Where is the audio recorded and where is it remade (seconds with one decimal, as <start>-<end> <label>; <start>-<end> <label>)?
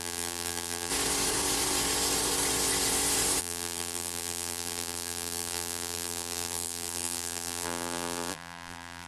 0.0-0.9 remade; 0.9-3.4 recorded; 3.4-9.1 remade